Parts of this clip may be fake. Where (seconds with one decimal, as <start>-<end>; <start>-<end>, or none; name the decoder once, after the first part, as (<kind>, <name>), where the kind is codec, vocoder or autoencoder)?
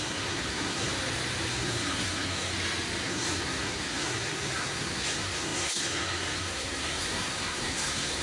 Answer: 0.0-0.9 (codec, SNAC); 1.5-2.5; 3.0-8.2